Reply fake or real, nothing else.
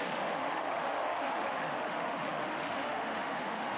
fake